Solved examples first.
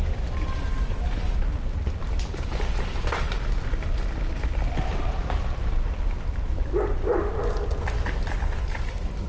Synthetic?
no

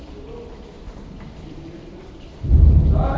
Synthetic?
no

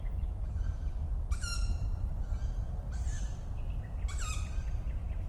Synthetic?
yes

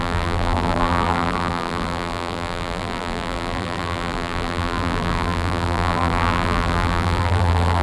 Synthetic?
yes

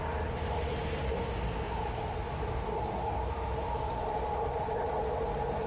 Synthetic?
no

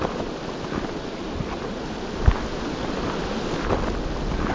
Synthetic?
no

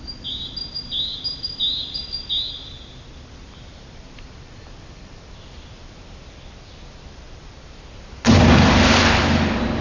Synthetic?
no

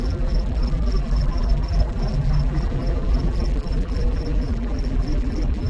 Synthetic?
yes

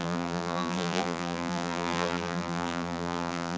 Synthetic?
yes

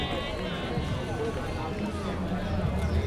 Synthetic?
no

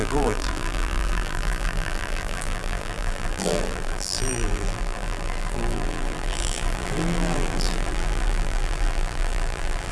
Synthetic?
yes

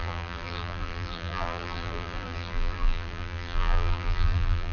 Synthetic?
yes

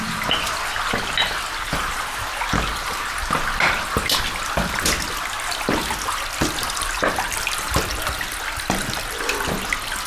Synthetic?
no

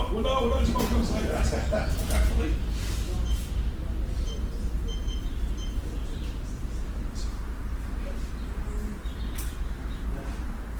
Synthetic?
no